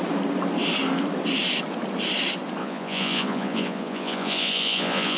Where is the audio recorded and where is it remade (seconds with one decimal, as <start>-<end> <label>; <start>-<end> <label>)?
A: 0.0-2.6 recorded; 2.6-5.2 remade